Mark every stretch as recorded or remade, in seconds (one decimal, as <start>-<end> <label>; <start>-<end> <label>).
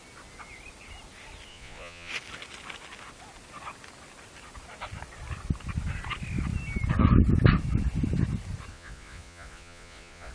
0.0-1.5 recorded; 1.5-2.1 remade; 2.1-8.7 recorded; 8.7-10.3 remade